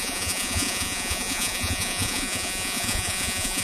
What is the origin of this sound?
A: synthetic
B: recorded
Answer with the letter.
A